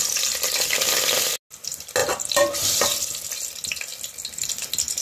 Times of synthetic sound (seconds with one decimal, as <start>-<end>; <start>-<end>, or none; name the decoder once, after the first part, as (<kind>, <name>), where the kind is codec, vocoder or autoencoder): 2.0-2.7 (vocoder, BigVGAN v2); 3.9-4.5